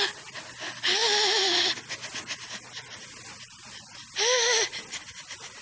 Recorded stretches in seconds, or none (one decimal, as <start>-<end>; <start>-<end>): 0.0-5.6